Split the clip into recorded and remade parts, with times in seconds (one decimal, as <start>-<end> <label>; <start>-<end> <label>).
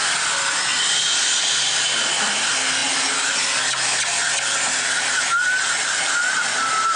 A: 0.0-7.0 recorded